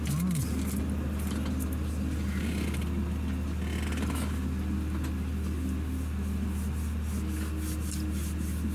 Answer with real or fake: real